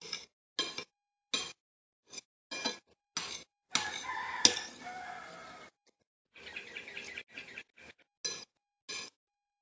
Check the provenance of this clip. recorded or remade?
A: recorded